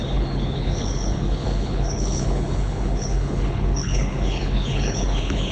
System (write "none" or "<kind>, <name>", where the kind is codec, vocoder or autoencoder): codec, HILCodec